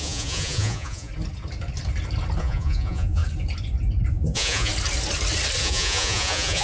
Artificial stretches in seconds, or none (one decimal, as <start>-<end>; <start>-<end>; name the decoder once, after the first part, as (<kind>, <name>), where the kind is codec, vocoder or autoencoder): 0.0-1.1 (vocoder, Vocos); 2.4-3.2; 4.1-4.7; 5.6-6.6